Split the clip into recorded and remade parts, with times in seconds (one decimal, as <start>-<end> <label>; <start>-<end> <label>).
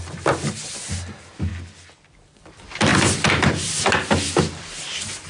0.0-1.5 remade; 1.5-2.1 recorded; 2.1-5.3 remade